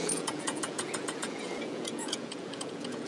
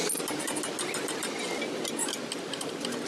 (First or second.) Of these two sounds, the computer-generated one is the first